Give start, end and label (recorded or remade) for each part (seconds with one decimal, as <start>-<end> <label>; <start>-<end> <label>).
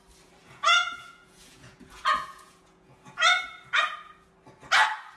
0.0-0.4 recorded; 0.4-3.4 remade; 3.4-5.2 recorded